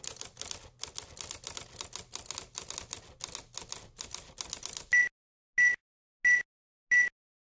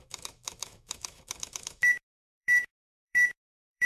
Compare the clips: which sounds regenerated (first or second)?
second